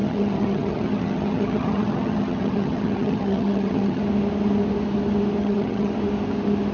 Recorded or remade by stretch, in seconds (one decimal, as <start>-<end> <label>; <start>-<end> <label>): 0.0-4.0 remade; 4.0-5.4 recorded; 5.4-5.9 remade; 5.9-6.7 recorded